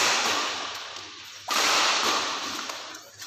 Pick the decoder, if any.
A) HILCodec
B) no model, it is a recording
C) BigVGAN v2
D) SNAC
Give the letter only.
B